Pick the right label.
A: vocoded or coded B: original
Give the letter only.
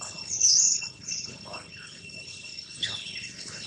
A